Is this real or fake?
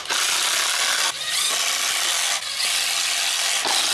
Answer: real